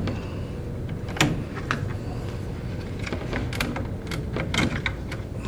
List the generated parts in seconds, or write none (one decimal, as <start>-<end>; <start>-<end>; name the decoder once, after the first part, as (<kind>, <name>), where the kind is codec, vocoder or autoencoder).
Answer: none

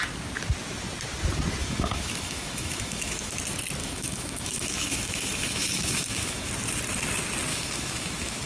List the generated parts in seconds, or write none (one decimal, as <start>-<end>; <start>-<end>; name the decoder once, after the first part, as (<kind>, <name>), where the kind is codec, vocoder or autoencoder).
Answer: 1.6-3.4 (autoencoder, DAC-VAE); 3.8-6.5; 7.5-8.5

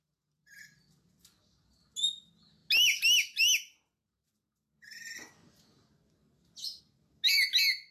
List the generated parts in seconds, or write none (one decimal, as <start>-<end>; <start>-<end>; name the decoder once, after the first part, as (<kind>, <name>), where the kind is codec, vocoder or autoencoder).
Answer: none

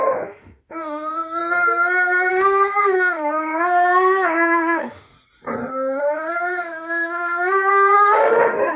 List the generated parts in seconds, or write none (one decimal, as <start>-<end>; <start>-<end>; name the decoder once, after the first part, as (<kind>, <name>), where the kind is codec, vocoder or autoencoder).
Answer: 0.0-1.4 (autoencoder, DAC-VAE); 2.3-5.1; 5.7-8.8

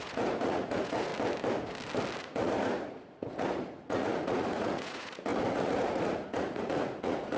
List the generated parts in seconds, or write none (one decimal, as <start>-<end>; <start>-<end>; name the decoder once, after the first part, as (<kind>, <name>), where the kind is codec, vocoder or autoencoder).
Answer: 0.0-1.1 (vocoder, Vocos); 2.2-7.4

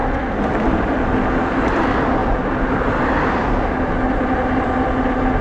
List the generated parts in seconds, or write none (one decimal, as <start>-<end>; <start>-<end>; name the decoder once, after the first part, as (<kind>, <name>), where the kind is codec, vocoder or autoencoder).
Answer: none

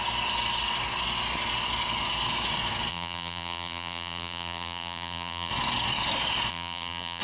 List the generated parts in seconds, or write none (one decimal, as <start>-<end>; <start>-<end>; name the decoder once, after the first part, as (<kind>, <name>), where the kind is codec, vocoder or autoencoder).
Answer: 2.9-5.5 (vocoder, BigVGAN v2); 6.5-7.2